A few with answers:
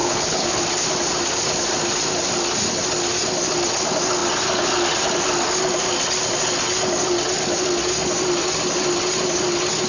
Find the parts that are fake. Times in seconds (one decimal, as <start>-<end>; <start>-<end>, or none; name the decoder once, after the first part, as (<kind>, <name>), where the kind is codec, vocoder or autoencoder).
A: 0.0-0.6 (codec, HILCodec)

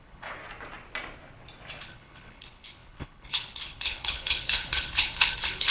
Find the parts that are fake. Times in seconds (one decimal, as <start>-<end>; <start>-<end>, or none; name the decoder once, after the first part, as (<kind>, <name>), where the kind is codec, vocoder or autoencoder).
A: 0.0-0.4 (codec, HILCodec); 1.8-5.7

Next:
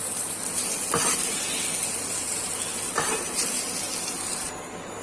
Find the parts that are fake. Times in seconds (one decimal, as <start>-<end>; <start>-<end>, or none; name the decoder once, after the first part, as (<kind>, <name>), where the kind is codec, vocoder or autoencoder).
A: none

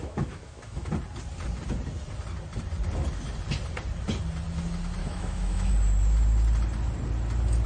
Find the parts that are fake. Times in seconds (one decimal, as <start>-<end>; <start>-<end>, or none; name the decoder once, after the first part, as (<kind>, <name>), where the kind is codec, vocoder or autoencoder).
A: 0.0-0.9 (autoencoder, DAC-VAE); 5.0-5.7

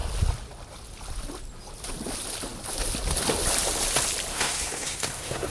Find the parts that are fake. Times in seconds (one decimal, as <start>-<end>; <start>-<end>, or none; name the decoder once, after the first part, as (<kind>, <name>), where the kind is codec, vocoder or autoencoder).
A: 4.3-5.5 (codec, SNAC)

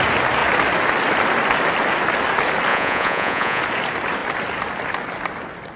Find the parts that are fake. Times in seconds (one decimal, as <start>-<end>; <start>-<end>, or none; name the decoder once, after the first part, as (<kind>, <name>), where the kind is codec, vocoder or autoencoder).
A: 2.7-3.6 (vocoder, Vocos)